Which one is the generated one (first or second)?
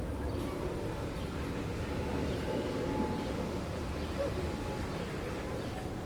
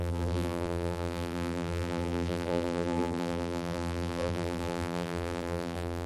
second